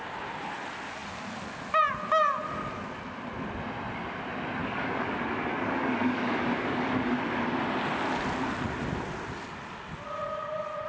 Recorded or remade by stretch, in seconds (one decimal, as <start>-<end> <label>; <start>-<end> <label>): 0.0-4.6 recorded; 4.6-7.4 remade; 7.4-10.9 recorded